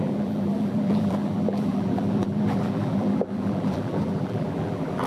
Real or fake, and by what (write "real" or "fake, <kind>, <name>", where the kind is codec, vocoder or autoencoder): fake, vocoder, BigVGAN v2